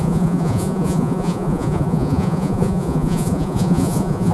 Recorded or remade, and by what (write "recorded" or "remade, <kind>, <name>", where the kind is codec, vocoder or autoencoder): remade, vocoder, Vocos